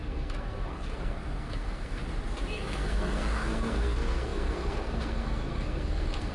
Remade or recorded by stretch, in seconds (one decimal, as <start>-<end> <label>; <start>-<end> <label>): 0.0-2.0 remade; 2.0-2.5 recorded; 2.5-6.3 remade